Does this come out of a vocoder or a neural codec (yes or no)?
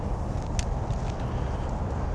no